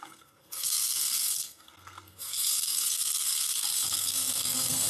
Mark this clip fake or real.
fake